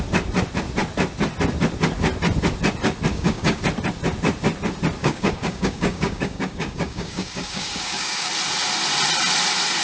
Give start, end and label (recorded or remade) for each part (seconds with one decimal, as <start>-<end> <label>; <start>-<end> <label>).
0.0-3.1 recorded; 3.1-3.6 remade; 3.6-5.0 recorded; 5.0-8.3 remade; 8.3-9.8 recorded